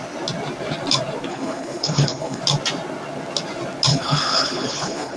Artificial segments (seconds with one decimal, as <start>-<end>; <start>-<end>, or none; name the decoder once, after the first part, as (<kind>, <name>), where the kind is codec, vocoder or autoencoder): 1.3-2.4 (codec, HILCodec); 3.9-5.2